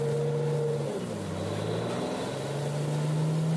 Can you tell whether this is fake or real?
real